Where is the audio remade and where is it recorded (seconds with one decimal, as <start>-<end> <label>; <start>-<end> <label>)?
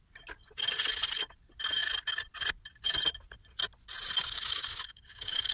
0.0-4.2 recorded; 4.2-5.5 remade